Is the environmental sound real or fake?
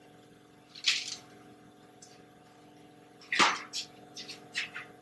real